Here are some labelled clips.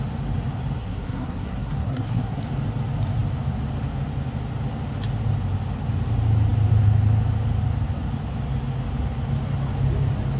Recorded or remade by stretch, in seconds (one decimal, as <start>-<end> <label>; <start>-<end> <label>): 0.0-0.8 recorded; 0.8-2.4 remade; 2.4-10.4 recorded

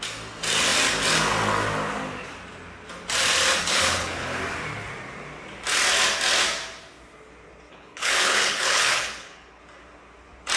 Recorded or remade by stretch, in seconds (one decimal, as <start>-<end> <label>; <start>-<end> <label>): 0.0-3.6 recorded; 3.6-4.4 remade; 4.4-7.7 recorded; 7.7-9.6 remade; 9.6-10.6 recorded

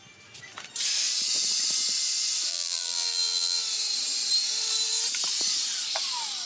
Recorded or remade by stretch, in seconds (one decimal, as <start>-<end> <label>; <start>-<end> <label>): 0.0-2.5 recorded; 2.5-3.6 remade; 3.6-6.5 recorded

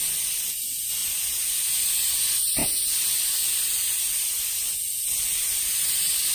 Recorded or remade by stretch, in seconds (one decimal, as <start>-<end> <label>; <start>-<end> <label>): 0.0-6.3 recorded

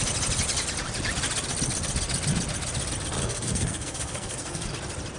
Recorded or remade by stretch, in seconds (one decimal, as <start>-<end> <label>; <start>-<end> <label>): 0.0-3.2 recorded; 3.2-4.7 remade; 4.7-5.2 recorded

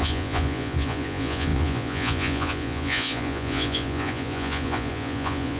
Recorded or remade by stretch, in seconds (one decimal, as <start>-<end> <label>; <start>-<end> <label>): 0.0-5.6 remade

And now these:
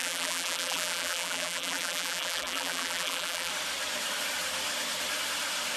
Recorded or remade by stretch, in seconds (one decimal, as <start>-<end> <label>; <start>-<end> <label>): 0.0-3.5 remade; 3.5-5.8 recorded

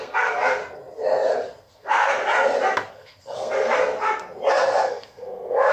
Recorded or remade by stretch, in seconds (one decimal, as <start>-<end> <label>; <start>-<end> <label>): 0.0-0.6 remade; 0.6-1.6 recorded; 1.6-2.2 remade; 2.2-2.9 recorded; 2.9-3.8 remade; 3.8-4.5 recorded; 4.5-5.7 remade